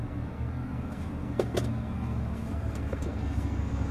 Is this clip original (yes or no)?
no